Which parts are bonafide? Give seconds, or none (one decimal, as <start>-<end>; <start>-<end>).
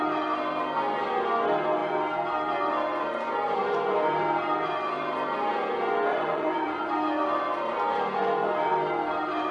0.0-6.1; 6.9-9.5